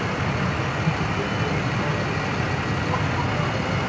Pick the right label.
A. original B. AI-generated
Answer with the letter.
A